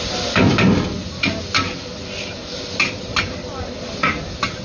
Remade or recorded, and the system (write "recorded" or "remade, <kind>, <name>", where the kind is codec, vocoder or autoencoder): recorded